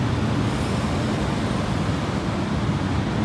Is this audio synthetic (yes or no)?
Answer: no